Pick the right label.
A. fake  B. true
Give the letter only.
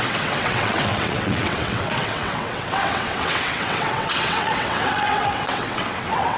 A